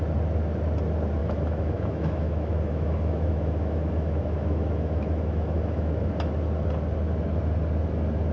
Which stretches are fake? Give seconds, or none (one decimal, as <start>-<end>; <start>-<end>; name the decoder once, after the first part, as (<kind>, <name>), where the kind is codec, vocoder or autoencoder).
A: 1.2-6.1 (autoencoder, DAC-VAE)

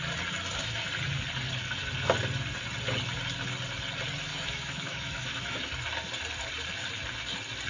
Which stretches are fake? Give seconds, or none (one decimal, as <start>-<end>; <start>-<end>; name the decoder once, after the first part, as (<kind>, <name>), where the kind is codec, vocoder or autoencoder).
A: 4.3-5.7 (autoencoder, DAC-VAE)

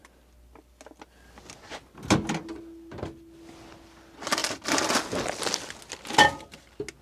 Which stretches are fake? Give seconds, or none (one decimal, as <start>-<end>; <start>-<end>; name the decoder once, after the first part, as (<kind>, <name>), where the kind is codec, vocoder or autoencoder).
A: none

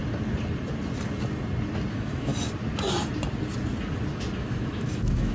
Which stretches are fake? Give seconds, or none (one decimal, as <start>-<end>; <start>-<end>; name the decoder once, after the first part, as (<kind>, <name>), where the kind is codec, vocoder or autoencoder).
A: 1.9-2.3 (autoencoder, DAC-VAE); 4.4-5.3

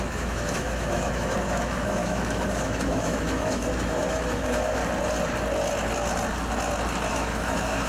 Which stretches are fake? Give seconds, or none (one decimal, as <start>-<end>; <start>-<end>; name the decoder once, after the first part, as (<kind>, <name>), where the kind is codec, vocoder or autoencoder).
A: 0.0-4.8 (autoencoder, DAC-VAE); 7.1-7.9